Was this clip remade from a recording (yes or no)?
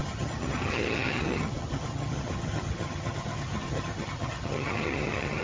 yes